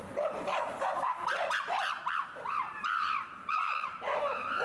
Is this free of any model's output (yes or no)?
no